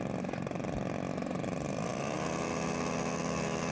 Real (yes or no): yes